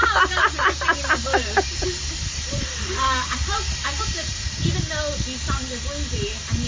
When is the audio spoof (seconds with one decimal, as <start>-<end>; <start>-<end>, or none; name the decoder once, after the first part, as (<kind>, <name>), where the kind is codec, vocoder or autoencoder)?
0.0-4.0 (vocoder, BigVGAN v2)

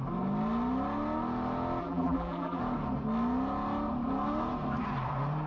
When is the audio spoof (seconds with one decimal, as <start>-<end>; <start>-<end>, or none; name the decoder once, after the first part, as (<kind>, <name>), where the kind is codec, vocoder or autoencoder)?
1.8-2.6 (vocoder, BigVGAN v2)

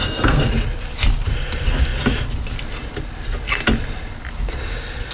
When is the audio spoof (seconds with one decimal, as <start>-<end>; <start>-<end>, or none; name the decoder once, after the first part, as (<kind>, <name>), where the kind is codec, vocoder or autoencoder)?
0.0-0.5 (codec, SNAC)

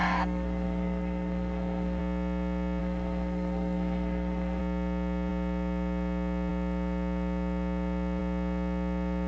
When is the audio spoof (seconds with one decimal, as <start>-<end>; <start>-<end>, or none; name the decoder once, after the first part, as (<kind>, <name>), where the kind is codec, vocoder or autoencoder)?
0.0-2.0 (codec, SNAC); 2.8-4.6

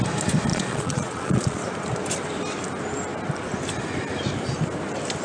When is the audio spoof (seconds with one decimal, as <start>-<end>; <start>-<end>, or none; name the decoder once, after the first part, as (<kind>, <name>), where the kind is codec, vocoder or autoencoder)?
0.5-1.6 (vocoder, Vocos)

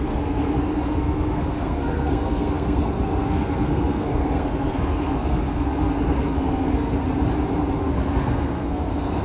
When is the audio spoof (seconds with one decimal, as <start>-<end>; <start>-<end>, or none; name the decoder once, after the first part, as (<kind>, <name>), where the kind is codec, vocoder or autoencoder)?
0.0-7.0 (codec, SNAC); 7.8-9.2